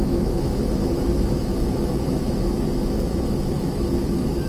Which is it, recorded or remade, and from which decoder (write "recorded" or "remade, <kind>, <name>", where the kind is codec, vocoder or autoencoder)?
remade, autoencoder, DAC-VAE